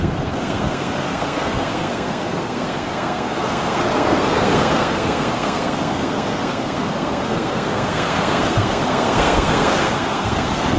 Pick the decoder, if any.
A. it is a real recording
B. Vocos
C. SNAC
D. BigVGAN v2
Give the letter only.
C